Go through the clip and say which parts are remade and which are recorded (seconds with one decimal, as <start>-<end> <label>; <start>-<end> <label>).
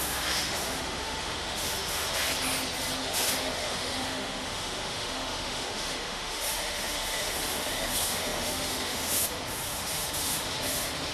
0.0-2.3 remade; 2.3-3.0 recorded; 3.0-11.1 remade